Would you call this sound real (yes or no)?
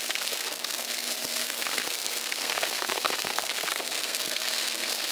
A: no